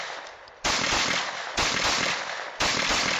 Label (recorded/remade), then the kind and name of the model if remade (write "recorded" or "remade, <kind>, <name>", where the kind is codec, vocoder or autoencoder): recorded